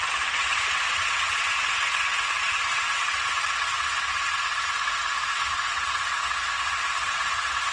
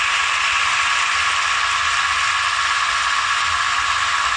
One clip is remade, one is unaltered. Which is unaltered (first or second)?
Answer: second